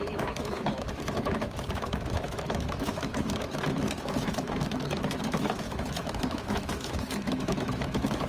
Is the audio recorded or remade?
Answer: remade